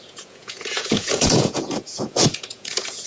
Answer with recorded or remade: remade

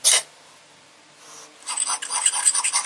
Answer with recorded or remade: recorded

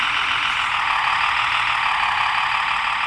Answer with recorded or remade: recorded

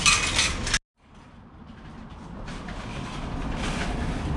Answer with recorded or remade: recorded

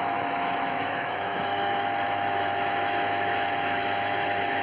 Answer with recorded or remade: remade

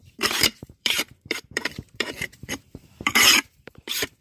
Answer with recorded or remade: remade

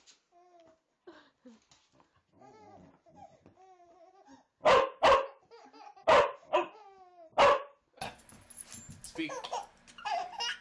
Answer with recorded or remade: recorded